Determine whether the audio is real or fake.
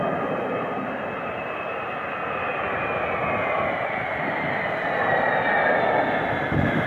real